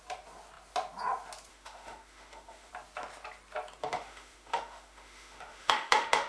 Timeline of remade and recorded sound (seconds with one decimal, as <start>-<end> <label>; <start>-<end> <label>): 0.0-1.5 recorded; 1.5-2.7 remade; 2.7-3.8 recorded; 3.8-6.3 remade